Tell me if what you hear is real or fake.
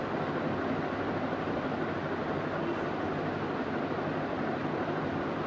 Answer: real